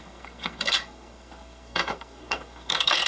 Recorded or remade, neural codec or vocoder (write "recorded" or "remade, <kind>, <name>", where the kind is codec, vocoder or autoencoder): remade, codec, SNAC